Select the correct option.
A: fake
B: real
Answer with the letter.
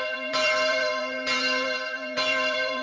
A